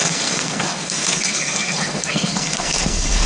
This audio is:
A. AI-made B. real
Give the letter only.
A